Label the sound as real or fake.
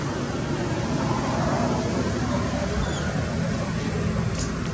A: real